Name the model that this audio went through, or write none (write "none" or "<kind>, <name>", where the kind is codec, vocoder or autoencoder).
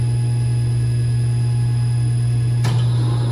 none